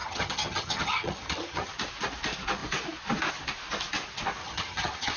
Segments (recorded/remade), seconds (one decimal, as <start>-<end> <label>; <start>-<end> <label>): 0.0-1.7 remade; 1.7-4.4 recorded; 4.4-5.2 remade